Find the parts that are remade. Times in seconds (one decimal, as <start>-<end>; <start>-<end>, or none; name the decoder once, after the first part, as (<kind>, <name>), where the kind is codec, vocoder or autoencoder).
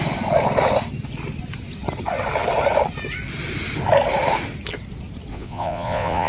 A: 5.3-6.3 (vocoder, Vocos)